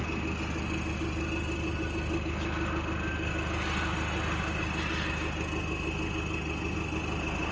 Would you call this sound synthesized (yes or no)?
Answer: no